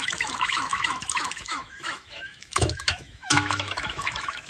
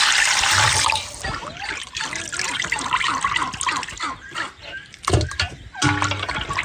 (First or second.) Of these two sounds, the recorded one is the second